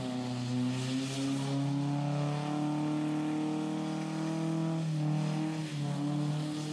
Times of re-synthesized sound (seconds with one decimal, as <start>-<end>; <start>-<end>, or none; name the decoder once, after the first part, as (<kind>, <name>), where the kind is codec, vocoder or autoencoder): none